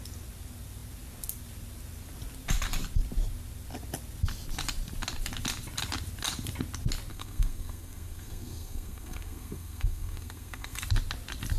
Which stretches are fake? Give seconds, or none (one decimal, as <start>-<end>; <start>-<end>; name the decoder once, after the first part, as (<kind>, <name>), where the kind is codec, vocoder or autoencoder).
7.1-10.8 (codec, SNAC)